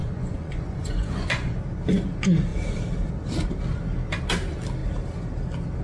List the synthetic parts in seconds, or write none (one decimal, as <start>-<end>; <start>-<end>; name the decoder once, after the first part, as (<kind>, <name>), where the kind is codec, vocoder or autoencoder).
0.0-1.6 (vocoder, Vocos)